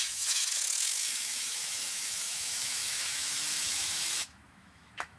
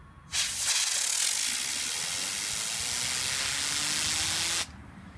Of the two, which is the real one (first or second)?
second